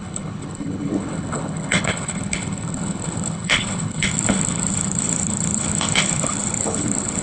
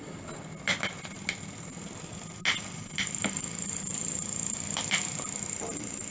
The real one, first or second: second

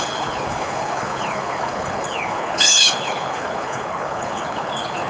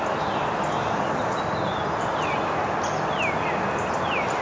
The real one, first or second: second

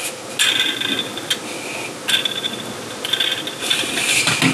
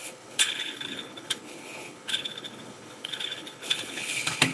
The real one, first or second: first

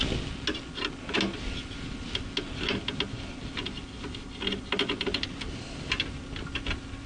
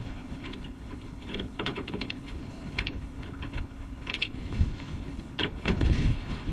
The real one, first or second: first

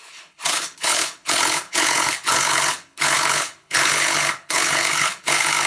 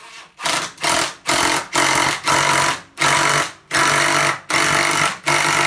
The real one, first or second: second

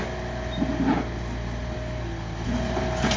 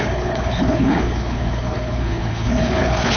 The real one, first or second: first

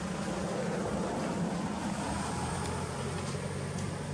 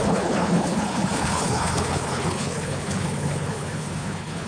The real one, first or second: first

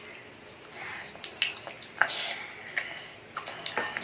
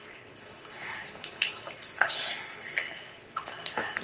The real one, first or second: first